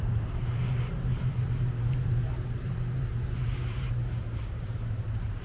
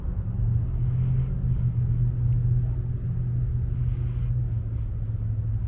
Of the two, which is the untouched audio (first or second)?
second